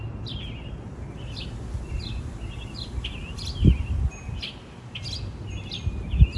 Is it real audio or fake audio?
real